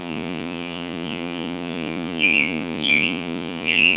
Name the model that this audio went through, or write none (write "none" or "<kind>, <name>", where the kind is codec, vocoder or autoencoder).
vocoder, Vocos